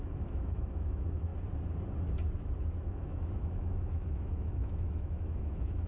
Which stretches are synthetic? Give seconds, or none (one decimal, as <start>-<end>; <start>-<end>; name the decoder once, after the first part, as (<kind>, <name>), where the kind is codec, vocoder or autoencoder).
0.0-1.3 (autoencoder, DAC-VAE); 2.8-5.9